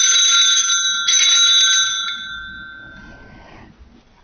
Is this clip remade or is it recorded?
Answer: recorded